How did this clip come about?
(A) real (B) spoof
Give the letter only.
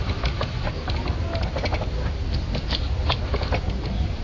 A